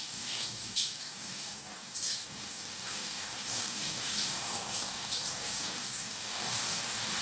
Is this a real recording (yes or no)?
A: no